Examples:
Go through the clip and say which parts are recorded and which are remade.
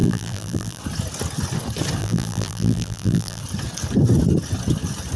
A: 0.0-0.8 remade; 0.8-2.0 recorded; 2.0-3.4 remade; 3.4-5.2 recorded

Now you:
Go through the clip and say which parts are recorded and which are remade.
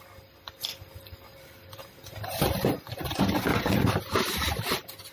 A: 0.0-0.7 recorded; 0.7-3.2 remade; 3.2-5.1 recorded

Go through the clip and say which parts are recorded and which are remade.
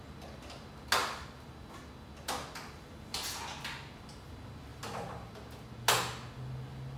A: 0.0-7.0 recorded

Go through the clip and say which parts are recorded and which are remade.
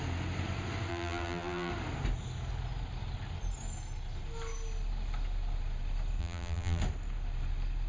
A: 0.0-0.9 recorded; 0.9-1.7 remade; 1.7-6.2 recorded; 6.2-6.8 remade; 6.8-7.9 recorded